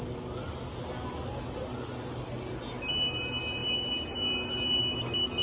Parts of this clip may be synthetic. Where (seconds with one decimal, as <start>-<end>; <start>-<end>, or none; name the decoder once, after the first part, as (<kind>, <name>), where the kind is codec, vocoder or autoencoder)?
none